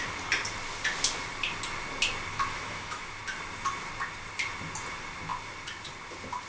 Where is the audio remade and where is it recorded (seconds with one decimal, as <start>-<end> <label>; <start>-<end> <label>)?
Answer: 0.0-2.3 recorded; 2.3-3.2 remade; 3.2-6.5 recorded